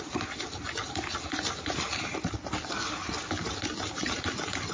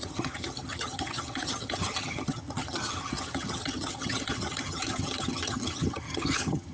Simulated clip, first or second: second